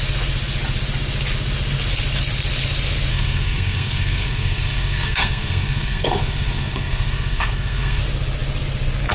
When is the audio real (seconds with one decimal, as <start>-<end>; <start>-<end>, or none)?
0.0-3.1; 8.0-9.1